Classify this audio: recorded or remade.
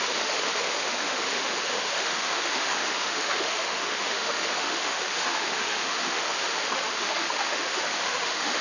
remade